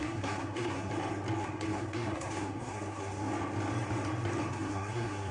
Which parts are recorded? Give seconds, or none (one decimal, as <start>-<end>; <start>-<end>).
0.9-1.4; 3.3-4.5